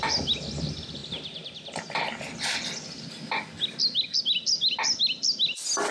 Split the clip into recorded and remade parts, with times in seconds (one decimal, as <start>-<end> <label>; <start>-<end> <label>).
0.0-5.9 recorded